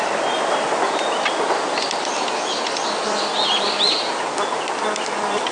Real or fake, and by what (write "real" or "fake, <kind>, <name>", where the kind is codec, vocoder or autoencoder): real